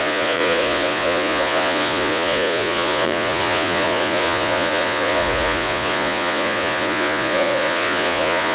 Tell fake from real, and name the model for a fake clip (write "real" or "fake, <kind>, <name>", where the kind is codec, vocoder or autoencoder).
fake, vocoder, Vocos